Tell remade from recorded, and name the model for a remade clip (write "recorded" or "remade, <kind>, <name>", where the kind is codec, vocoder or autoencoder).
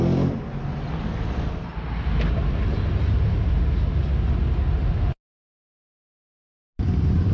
recorded